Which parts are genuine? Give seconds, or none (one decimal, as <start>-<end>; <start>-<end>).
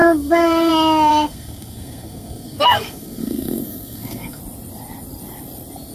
0.7-1.1; 4.4-5.9